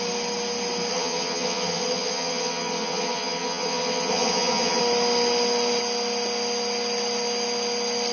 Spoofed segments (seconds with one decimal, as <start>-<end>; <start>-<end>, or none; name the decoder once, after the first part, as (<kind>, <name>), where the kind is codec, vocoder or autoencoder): 0.9-4.8 (vocoder, HiFi-GAN)